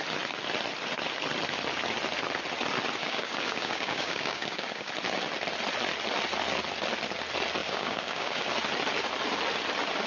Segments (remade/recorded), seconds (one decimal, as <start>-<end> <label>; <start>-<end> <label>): 0.0-3.0 recorded; 3.0-4.9 remade; 4.9-7.6 recorded; 7.6-8.5 remade; 8.5-10.1 recorded